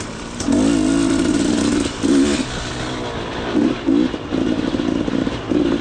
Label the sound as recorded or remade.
recorded